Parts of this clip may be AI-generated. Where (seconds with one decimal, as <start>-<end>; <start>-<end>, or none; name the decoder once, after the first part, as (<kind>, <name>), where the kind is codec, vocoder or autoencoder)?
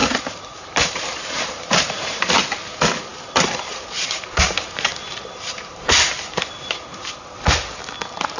0.0-2.3 (vocoder, BigVGAN v2); 3.1-6.1